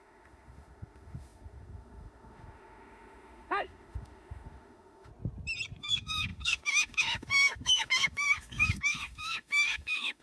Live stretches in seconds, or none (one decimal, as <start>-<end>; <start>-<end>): 5.1-5.8

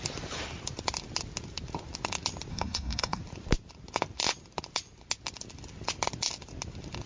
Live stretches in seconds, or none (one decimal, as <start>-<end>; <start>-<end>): 0.0-2.5; 3.2-7.1

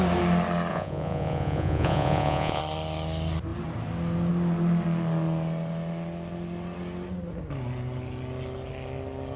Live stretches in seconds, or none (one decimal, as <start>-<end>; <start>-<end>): 0.0-0.7; 2.6-9.4

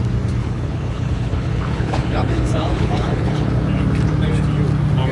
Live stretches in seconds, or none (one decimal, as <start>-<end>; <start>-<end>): 0.0-0.4; 3.5-5.1

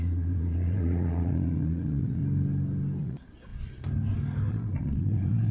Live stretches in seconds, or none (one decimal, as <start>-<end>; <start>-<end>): 2.2-3.0; 3.5-4.5

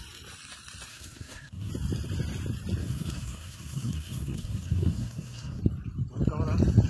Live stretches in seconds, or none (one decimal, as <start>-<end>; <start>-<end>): 0.0-0.9; 1.7-2.8; 5.6-6.9